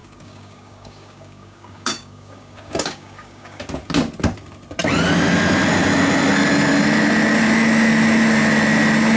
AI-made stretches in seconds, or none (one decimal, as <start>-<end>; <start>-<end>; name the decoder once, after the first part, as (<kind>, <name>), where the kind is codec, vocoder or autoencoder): 0.0-3.6 (codec, DAC)